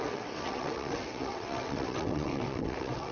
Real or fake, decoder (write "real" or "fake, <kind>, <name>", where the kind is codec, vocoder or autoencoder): fake, vocoder, WaveNeXt